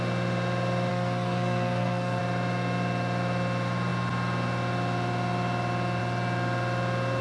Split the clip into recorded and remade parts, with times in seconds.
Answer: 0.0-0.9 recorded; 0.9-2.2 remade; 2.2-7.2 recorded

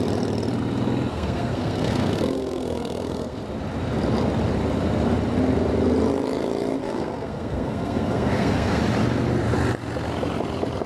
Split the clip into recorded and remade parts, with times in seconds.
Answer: 0.0-1.1 recorded; 1.1-3.4 remade; 3.4-6.8 recorded; 6.8-8.8 remade; 8.8-10.9 recorded

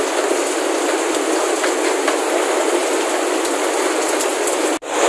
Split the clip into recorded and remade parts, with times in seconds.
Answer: 0.0-5.1 recorded